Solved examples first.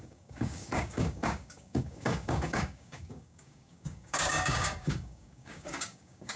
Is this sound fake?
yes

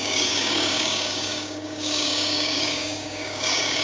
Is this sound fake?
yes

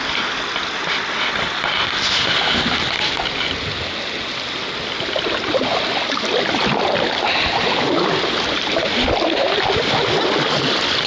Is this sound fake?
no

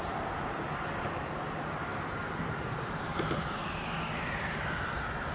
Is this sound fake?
no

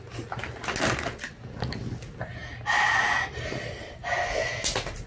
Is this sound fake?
no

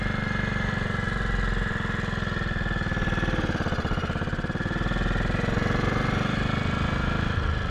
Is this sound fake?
no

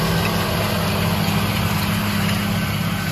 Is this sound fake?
no